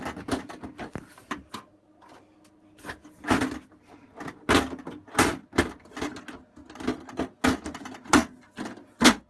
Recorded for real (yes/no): yes